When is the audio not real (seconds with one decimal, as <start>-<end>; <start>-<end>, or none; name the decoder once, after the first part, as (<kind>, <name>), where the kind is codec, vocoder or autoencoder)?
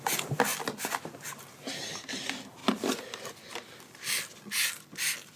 none